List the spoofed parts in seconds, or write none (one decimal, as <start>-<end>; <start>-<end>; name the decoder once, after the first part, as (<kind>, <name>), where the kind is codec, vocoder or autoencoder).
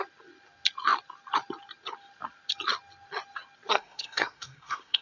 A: 3.7-5.0 (codec, SNAC)